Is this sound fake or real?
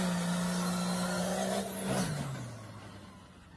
real